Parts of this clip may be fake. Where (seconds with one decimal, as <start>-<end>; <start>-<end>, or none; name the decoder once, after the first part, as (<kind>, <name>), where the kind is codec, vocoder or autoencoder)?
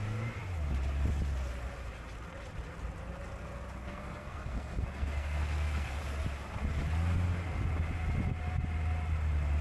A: 3.8-6.0 (codec, SNAC)